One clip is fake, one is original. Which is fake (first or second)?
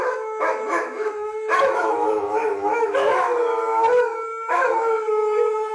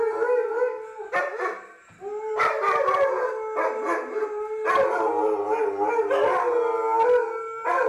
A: first